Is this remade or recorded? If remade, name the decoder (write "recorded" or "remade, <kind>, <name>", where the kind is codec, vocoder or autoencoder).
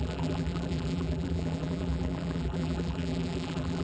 remade, vocoder, BigVGAN v2